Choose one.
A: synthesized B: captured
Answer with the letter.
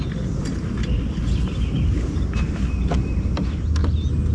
B